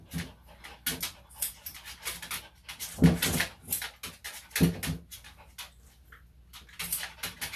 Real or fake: real